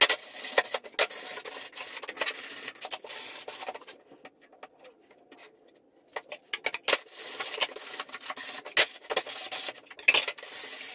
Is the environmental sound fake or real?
real